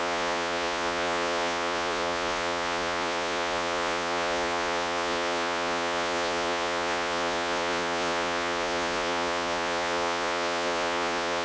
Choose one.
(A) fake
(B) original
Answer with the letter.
A